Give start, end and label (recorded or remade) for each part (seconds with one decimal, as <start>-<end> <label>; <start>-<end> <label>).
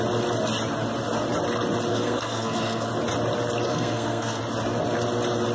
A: 0.0-1.9 recorded; 1.9-2.9 remade; 2.9-3.7 recorded; 3.7-4.4 remade; 4.4-5.5 recorded